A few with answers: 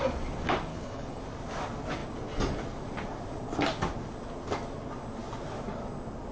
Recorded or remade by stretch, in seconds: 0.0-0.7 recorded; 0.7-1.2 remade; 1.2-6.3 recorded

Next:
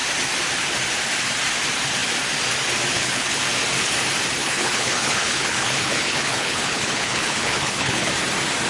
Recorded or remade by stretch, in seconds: 0.0-2.9 recorded; 2.9-3.4 remade; 3.4-4.4 recorded; 4.4-8.1 remade; 8.1-8.7 recorded

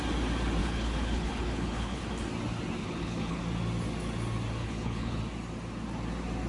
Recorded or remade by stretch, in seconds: 0.0-0.6 recorded; 0.6-2.1 remade; 2.1-2.8 recorded; 2.8-3.4 remade; 3.4-4.6 recorded; 4.6-5.2 remade; 5.2-6.5 recorded

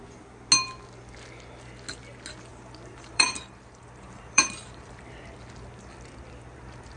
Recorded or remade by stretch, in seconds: 0.0-2.5 recorded; 2.5-5.2 remade; 5.2-7.0 recorded

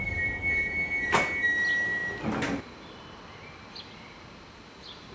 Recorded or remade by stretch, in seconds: 0.0-5.1 recorded

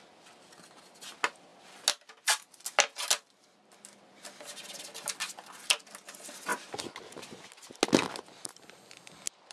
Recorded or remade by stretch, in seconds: 0.0-9.5 recorded